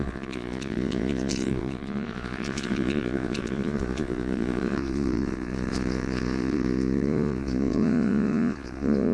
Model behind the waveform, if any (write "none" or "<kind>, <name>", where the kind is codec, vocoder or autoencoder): vocoder, Vocos